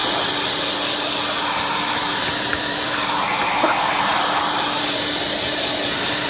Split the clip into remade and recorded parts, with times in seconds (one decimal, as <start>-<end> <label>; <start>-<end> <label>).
0.0-1.6 recorded; 1.6-3.3 remade; 3.3-4.0 recorded; 4.0-6.3 remade